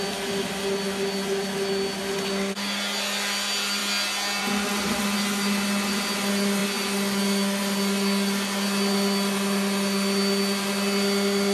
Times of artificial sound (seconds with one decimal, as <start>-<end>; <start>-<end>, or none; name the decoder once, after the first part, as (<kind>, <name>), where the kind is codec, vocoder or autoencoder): none